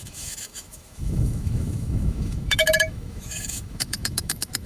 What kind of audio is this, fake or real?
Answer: fake